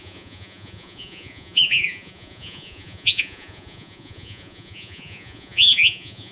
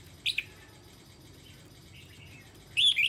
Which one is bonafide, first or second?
second